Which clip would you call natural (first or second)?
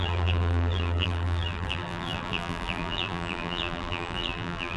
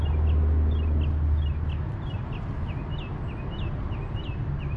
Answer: second